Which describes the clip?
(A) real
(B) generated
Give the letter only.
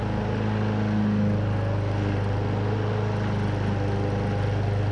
A